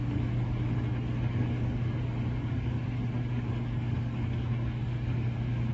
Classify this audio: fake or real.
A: fake